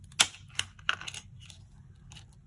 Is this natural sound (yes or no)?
yes